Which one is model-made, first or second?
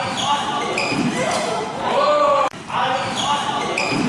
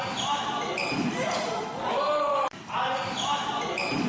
first